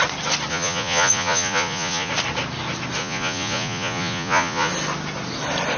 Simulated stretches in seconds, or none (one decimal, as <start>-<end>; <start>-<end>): 0.5-2.1; 3.0-4.7